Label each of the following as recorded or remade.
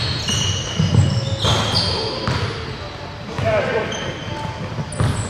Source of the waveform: recorded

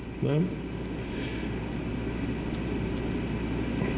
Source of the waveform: recorded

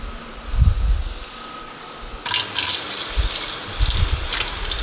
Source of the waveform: recorded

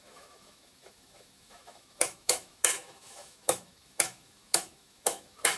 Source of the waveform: remade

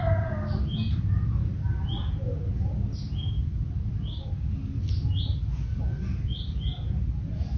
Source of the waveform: recorded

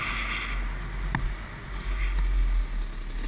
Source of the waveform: recorded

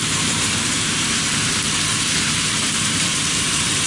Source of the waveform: remade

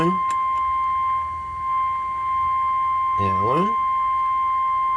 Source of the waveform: recorded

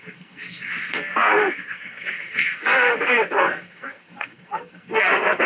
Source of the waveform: remade